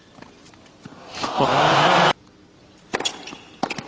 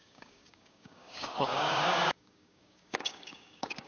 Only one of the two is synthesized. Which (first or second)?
second